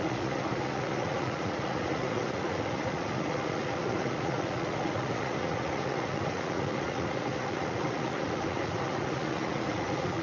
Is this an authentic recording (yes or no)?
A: no